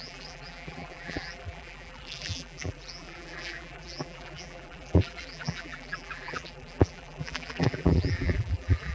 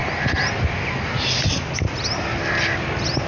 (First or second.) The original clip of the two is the second